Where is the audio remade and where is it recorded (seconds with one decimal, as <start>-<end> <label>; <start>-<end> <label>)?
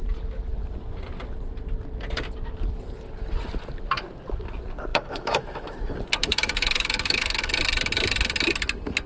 0.0-4.9 recorded; 4.9-5.8 remade; 5.8-6.2 recorded; 6.2-7.5 remade; 7.5-9.1 recorded